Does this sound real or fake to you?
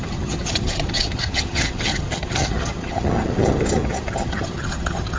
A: fake